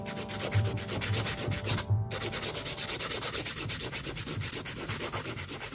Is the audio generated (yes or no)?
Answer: no